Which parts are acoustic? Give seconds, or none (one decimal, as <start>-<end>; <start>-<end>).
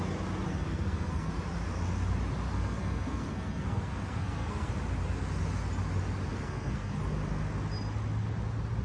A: 0.0-0.5; 1.3-2.5; 4.7-6.3; 7.0-8.8